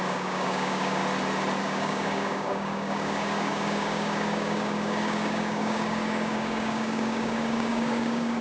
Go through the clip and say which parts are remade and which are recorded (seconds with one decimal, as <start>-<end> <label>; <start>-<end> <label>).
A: 0.0-1.0 remade; 1.0-1.6 recorded; 1.6-8.4 remade